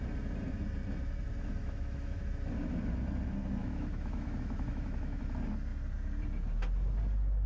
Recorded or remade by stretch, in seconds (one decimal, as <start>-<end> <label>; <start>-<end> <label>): 0.0-1.6 recorded; 1.6-2.2 remade; 2.2-3.6 recorded; 3.6-5.2 remade; 5.2-7.5 recorded